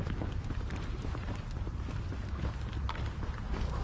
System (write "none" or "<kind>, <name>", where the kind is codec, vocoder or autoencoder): none